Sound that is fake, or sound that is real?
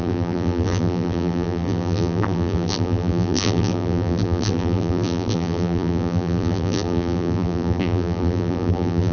fake